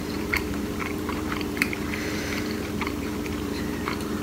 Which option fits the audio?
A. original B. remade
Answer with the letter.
B